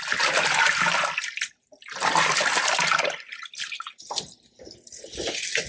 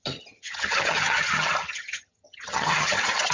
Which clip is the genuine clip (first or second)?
first